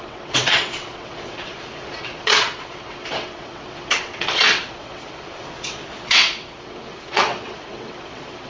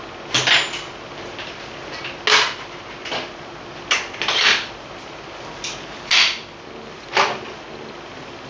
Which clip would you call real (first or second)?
second